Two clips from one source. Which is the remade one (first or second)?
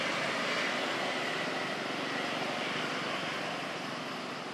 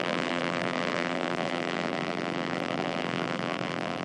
second